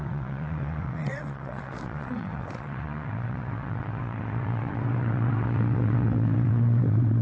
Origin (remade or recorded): remade